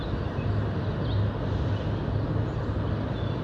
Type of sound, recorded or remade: recorded